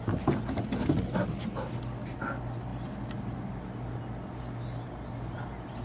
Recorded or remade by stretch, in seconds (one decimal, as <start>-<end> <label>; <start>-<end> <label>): 0.0-5.8 recorded